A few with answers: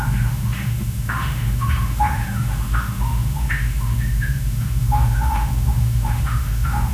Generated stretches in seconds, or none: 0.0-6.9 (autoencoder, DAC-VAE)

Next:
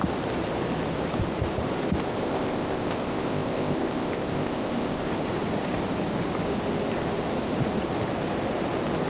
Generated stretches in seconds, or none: 2.2-5.1 (codec, ZipCodec)

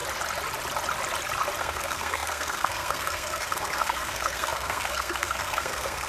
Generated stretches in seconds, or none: 1.6-6.1 (codec, SNAC)

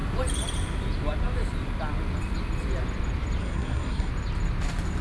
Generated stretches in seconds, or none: 3.4-4.1 (codec, SNAC)